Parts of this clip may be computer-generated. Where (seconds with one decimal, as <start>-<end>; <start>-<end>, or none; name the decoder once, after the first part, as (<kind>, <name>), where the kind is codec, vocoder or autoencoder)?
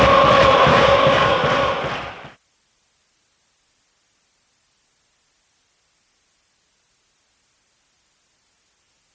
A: 0.7-1.4 (codec, DAC)